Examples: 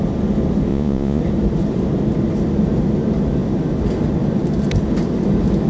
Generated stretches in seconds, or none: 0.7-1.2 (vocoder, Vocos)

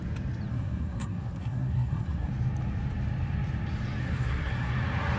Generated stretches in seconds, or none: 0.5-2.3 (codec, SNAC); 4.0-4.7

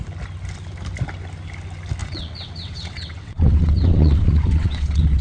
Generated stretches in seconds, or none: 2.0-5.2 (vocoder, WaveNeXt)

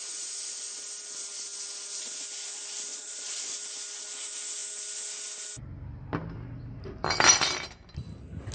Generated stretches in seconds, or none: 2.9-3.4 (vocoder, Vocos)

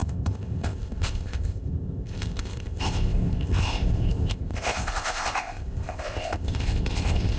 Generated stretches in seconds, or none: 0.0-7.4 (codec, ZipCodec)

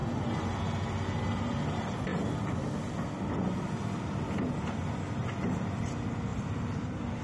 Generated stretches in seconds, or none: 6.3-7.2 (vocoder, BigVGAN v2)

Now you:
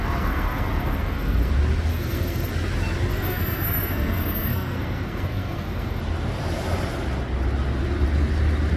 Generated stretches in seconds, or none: 0.0-1.5 (codec, SNAC); 1.9-2.5; 3.1-6.0